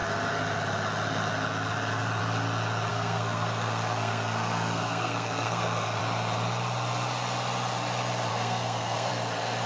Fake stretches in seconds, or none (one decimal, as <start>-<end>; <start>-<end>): 2.9-6.0; 8.3-9.1